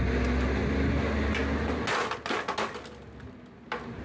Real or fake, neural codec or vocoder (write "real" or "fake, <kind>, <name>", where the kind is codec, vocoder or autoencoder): real